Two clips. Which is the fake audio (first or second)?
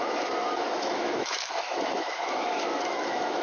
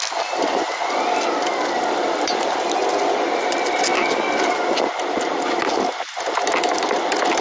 first